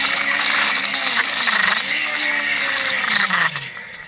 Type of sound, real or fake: fake